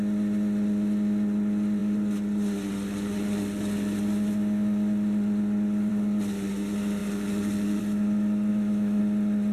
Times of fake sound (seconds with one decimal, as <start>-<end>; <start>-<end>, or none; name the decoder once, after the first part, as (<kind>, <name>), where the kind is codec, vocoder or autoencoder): 8.5-9.0 (autoencoder, DAC-VAE)

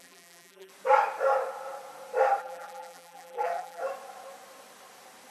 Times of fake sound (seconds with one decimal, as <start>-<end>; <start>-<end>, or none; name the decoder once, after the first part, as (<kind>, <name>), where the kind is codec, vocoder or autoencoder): 0.0-0.7 (vocoder, BigVGAN v2); 2.4-3.8

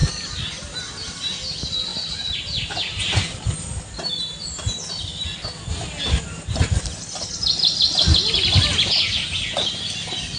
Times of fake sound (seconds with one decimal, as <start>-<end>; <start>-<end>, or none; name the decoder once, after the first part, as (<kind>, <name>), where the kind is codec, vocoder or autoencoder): 1.0-1.9 (vocoder, BigVGAN v2); 7.0-10.4

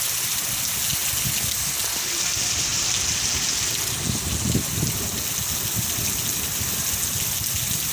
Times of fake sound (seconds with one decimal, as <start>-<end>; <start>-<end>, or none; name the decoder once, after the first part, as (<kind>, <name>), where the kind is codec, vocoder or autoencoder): none

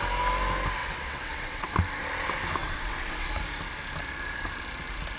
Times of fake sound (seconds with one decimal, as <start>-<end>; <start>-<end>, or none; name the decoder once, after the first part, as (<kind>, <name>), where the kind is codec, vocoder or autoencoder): 0.8-1.7 (vocoder, WaveNeXt); 2.6-3.3